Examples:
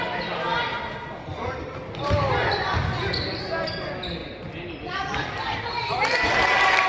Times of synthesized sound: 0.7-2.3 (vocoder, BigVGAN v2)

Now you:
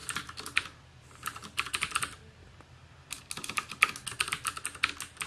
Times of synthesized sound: none